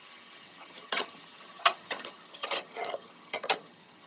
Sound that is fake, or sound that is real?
fake